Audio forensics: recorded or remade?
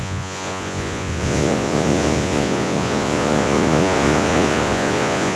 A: remade